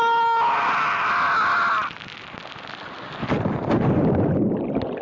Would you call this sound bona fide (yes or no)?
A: yes